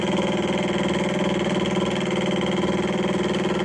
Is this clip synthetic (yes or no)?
no